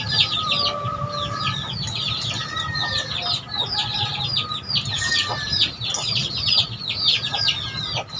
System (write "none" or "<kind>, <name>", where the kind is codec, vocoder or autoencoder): none